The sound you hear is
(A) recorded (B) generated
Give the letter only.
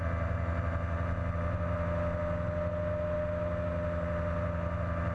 A